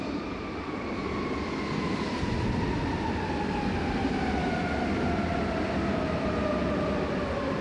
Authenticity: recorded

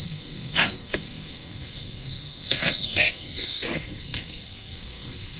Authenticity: remade